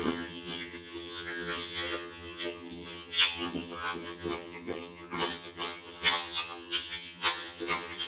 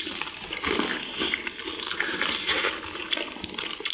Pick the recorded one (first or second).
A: second